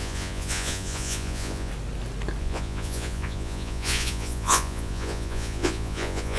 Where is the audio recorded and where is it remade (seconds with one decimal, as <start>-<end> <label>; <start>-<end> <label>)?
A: 0.0-1.7 remade; 1.7-2.4 recorded; 2.4-6.4 remade